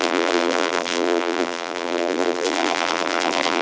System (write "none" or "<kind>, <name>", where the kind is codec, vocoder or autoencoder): vocoder, BigVGAN v2